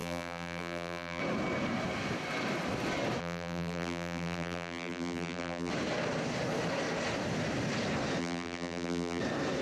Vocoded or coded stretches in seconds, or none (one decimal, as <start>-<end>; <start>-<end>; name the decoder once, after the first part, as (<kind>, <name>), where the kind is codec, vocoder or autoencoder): 0.0-1.2 (vocoder, BigVGAN v2); 3.2-5.7; 8.2-9.2